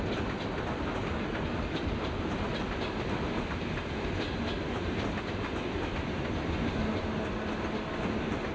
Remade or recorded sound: recorded